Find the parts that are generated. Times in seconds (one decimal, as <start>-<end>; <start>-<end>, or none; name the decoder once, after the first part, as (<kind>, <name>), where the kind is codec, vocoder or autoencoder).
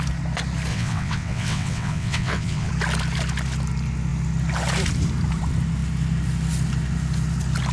0.7-2.7 (vocoder, WaveNeXt)